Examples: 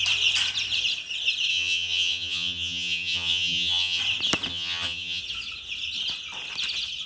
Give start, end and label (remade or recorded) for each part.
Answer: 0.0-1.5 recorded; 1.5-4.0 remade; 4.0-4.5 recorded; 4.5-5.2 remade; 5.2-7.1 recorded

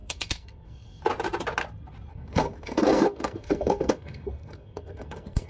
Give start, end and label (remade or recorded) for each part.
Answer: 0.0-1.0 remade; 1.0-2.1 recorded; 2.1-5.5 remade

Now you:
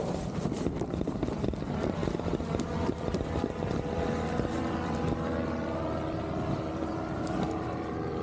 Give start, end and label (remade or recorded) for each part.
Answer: 0.0-2.0 remade; 2.0-2.9 recorded; 2.9-8.2 remade

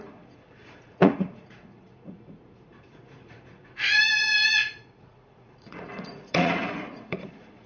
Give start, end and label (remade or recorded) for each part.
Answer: 0.0-7.7 remade

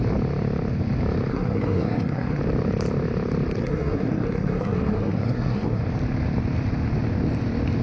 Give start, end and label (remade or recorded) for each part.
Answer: 0.0-1.3 recorded; 1.3-2.4 remade; 2.4-3.6 recorded; 3.6-5.8 remade; 5.8-7.8 recorded

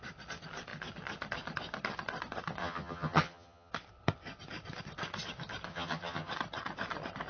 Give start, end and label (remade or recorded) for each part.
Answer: 0.0-2.6 recorded; 2.6-3.7 remade; 3.7-5.7 recorded; 5.7-6.3 remade; 6.3-7.3 recorded